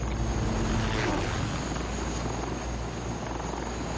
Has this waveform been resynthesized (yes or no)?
no